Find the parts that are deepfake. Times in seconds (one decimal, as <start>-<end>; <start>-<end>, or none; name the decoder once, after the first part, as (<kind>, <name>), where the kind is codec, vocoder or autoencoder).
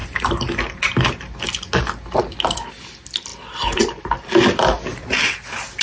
none